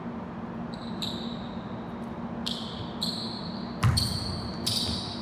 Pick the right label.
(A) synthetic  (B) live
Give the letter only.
B